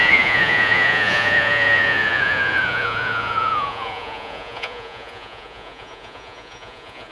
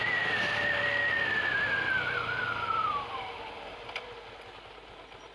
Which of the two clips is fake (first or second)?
first